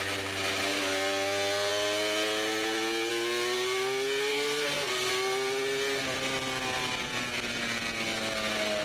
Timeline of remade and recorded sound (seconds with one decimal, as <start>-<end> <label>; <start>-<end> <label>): 0.0-4.3 recorded; 4.3-5.1 remade; 5.1-8.8 recorded